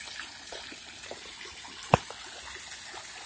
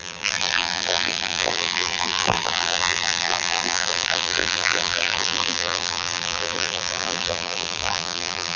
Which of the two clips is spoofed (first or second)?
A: second